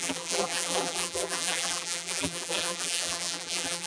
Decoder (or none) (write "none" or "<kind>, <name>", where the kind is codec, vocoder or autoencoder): vocoder, BigVGAN v2